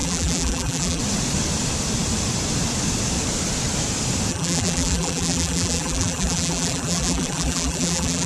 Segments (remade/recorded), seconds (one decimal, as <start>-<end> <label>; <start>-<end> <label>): 0.0-1.0 remade; 1.0-4.3 recorded; 4.3-8.3 remade